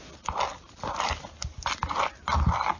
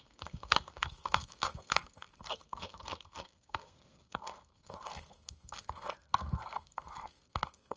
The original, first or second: first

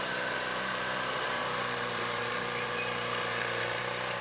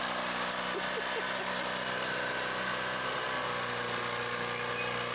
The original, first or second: second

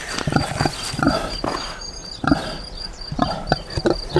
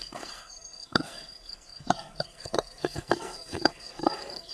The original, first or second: first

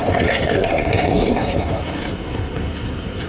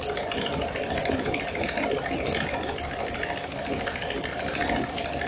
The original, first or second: second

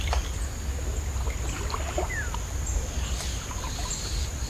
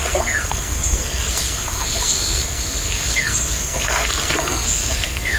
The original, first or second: first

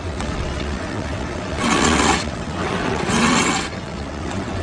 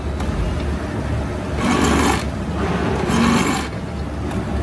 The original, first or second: second